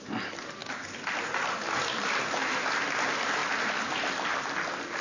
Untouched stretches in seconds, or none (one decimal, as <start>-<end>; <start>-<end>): 0.0-5.0